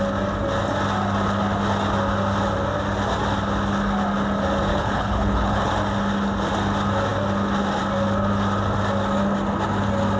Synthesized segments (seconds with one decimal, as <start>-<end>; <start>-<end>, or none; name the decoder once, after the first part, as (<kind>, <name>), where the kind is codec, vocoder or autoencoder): 4.7-5.7 (codec, HILCodec)